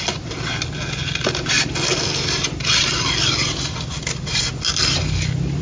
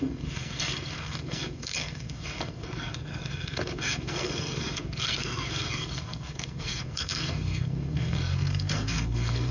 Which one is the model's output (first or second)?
second